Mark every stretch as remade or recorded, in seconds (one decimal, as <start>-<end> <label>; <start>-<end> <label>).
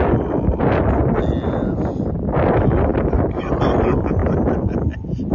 0.0-2.9 recorded; 2.9-3.5 remade; 3.5-5.3 recorded